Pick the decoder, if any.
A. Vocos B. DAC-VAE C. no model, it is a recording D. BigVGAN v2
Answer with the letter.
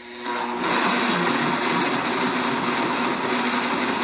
C